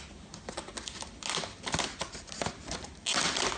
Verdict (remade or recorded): recorded